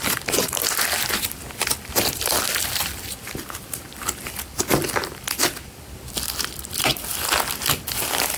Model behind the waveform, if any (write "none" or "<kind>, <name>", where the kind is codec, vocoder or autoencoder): vocoder, BigVGAN v2